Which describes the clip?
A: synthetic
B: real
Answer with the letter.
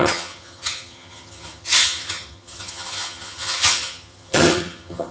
A